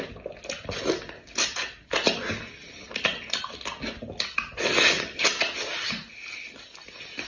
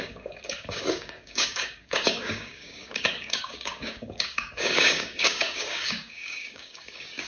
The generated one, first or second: second